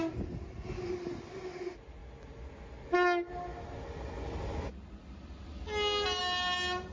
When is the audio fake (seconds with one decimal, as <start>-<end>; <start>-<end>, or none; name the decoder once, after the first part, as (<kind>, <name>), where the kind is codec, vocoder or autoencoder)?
none

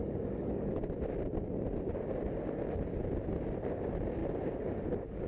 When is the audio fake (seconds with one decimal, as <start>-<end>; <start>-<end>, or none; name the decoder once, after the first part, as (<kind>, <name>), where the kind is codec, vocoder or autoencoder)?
0.0-0.7 (codec, DAC)

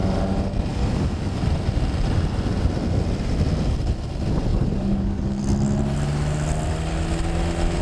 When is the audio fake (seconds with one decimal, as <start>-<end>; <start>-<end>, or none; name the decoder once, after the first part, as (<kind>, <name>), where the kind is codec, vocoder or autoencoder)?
0.7-1.4 (codec, DAC); 4.5-5.4

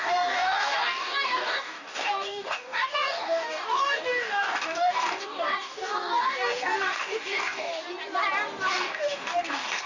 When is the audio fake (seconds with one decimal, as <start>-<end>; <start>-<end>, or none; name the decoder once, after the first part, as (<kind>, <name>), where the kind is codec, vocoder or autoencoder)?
0.0-7.7 (codec, DAC); 8.7-9.9

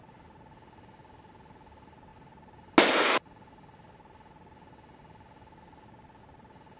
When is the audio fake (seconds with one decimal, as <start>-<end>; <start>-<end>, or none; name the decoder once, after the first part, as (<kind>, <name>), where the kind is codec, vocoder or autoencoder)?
none